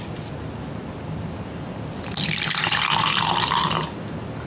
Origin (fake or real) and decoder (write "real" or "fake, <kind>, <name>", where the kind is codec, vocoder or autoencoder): real